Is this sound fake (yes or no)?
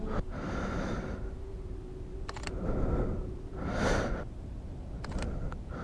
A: no